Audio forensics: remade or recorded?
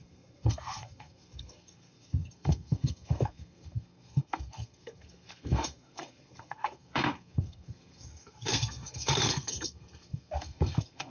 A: remade